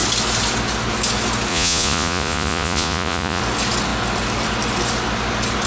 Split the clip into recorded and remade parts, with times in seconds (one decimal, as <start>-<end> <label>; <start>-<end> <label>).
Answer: 0.0-1.5 recorded; 1.5-3.4 remade; 3.4-5.7 recorded